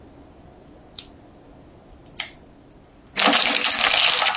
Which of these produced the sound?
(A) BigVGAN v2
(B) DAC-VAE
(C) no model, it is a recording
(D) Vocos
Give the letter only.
C